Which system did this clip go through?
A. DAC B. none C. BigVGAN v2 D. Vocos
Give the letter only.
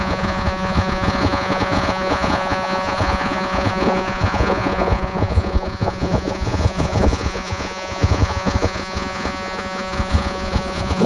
D